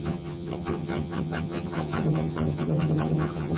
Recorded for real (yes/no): no